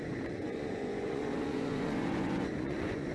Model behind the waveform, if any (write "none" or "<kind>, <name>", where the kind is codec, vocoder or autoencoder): vocoder, Vocos